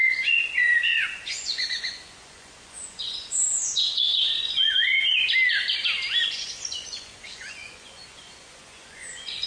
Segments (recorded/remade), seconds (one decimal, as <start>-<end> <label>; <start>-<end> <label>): 0.0-4.9 remade; 4.9-6.2 recorded; 6.2-9.5 remade